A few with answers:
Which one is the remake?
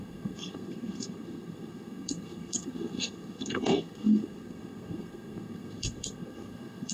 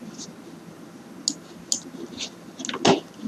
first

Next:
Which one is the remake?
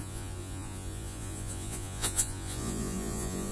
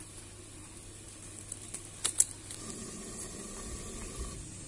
first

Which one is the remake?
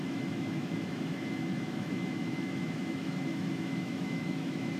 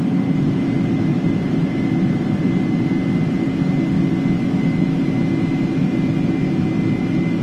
first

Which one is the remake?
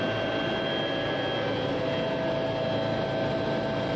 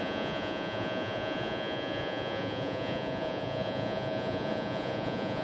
second